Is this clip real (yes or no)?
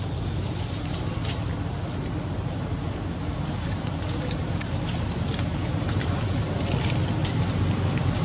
no